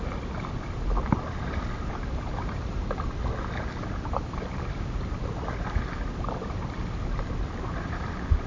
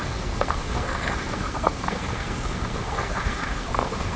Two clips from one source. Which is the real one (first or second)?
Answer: first